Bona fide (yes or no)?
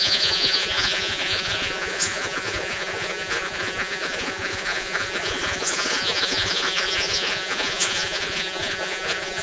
no